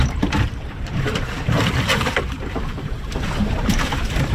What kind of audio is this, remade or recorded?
remade